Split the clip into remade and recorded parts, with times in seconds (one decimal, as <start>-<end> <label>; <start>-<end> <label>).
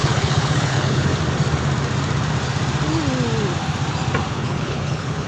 0.0-1.1 remade; 1.1-4.3 recorded; 4.3-5.3 remade